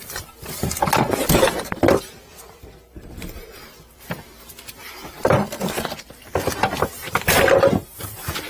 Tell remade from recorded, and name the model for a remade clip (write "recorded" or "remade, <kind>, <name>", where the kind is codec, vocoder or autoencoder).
remade, vocoder, BigVGAN v2